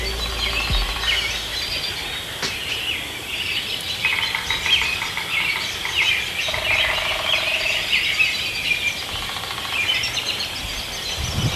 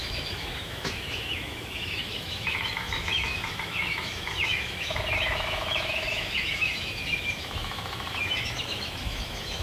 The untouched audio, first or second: first